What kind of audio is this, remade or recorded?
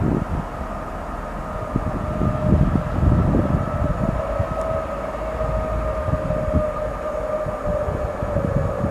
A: recorded